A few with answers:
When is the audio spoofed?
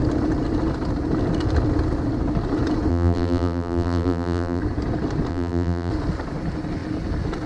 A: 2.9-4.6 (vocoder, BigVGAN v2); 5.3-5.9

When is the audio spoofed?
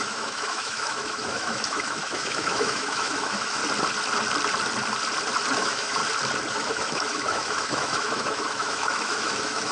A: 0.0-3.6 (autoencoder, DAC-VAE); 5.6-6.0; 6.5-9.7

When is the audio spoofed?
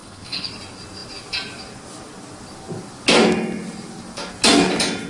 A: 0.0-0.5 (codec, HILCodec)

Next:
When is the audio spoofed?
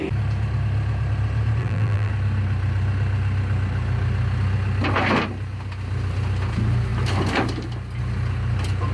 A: 1.6-2.1 (vocoder, BigVGAN v2)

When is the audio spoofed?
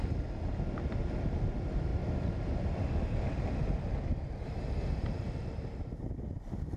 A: none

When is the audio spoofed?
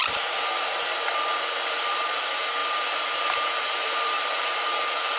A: 0.0-0.7 (vocoder, BigVGAN v2); 1.7-5.2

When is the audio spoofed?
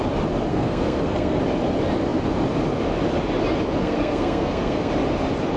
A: 0.5-1.4 (codec, SNAC); 3.8-4.9